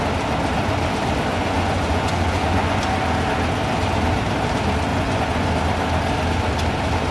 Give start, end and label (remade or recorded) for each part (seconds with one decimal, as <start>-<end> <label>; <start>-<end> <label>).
0.0-1.3 recorded; 1.3-2.8 remade; 2.8-4.9 recorded; 4.9-5.5 remade; 5.5-7.1 recorded